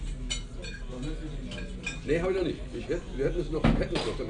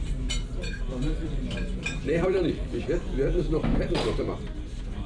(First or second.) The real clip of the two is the first